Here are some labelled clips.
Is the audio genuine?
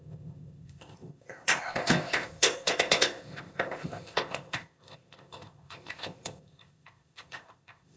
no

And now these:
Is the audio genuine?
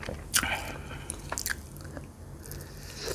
yes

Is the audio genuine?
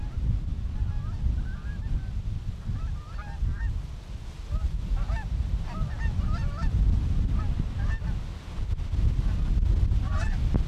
yes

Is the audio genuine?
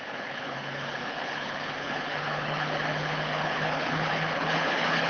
no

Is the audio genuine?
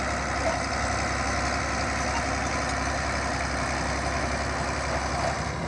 yes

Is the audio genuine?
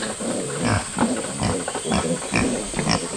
yes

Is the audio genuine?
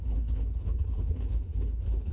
no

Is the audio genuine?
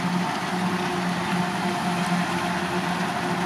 yes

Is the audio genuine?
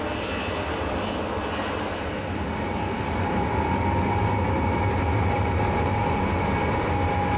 yes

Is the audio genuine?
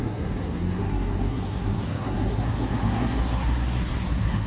no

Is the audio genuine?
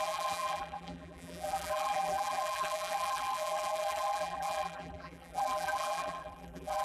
no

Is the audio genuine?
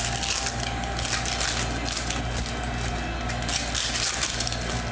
yes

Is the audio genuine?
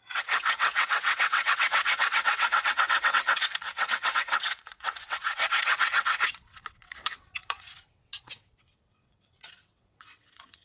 no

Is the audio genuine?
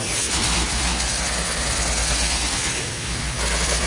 yes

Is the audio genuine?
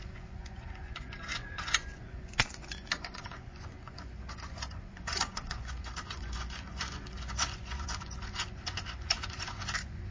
no